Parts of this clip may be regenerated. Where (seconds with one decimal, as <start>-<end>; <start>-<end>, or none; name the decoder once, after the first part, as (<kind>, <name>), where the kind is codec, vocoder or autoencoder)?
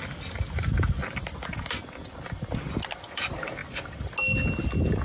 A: none